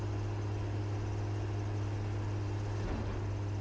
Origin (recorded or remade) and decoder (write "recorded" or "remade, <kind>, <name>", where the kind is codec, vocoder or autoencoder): recorded